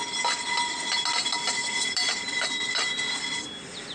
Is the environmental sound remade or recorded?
recorded